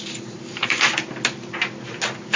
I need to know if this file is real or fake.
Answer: real